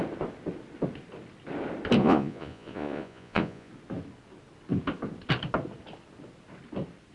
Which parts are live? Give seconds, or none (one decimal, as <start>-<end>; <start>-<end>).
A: 0.0-2.0; 3.7-7.1